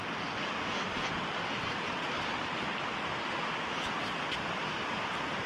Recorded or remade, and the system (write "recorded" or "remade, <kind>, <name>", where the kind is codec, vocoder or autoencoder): recorded